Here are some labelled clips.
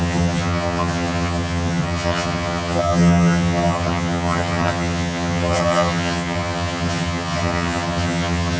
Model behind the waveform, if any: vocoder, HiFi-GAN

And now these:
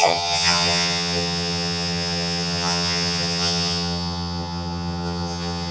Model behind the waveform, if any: vocoder, HiFi-GAN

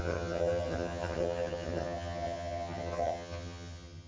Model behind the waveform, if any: vocoder, HiFi-GAN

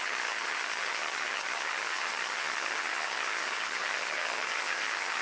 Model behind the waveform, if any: vocoder, HiFi-GAN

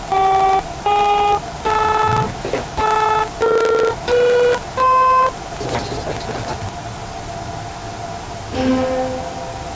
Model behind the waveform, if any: none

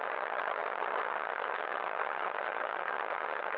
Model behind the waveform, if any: vocoder, HiFi-GAN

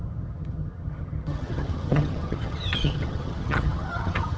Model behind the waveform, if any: vocoder, HiFi-GAN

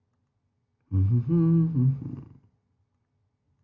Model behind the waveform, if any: none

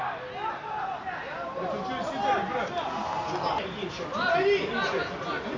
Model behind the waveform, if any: none